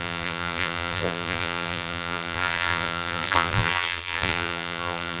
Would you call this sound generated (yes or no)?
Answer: yes